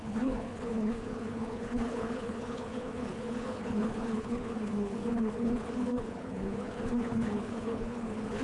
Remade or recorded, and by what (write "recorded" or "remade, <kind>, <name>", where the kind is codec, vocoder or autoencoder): remade, codec, HILCodec